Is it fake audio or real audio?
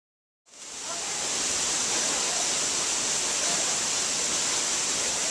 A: real